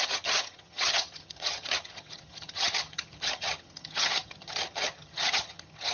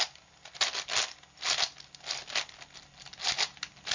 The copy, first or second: first